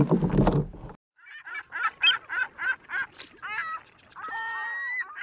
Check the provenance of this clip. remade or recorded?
recorded